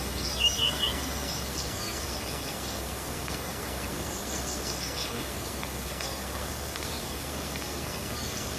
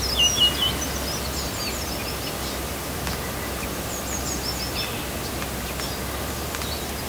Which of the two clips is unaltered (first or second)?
second